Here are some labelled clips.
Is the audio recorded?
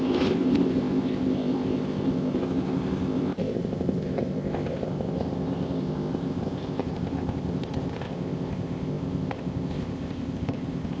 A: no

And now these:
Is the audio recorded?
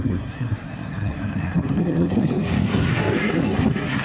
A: no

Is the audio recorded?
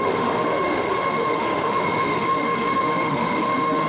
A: no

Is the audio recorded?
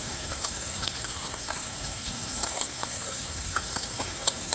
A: no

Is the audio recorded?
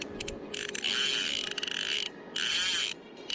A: yes